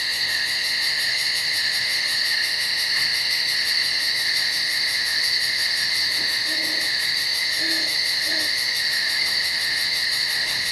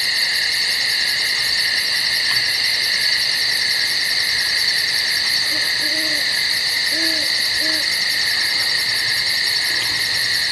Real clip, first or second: second